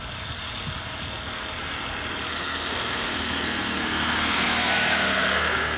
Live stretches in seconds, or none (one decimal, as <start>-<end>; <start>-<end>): 0.0-2.3